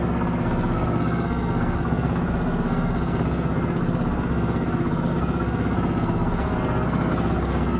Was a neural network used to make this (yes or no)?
yes